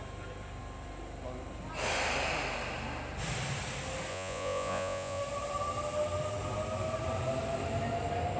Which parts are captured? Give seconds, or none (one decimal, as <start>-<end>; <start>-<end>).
0.0-4.1; 5.2-8.4

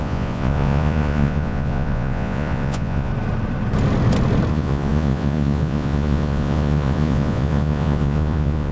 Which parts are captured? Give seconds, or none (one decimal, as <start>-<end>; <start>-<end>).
3.1-4.5